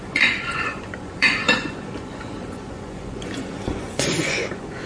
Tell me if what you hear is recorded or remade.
remade